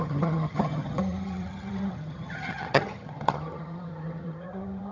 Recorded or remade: remade